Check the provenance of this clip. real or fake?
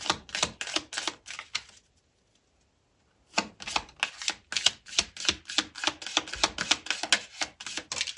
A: real